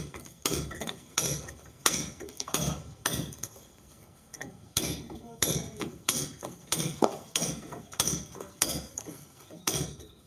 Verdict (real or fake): fake